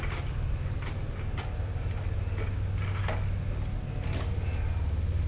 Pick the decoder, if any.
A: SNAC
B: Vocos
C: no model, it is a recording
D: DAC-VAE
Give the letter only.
C